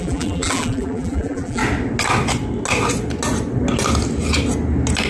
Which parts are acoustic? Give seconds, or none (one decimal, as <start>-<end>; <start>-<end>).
1.6-5.1